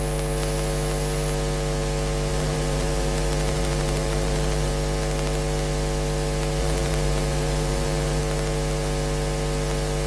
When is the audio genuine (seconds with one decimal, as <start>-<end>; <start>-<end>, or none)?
0.0-2.3; 4.7-6.6; 8.2-10.1